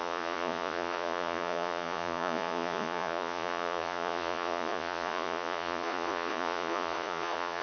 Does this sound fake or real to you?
fake